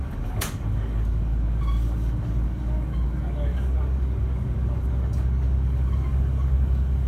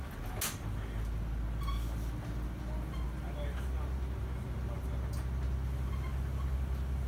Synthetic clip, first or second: first